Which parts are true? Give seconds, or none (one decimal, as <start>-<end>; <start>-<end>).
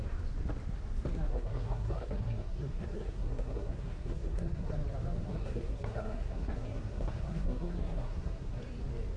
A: 0.0-1.3; 4.7-5.2; 8.6-9.2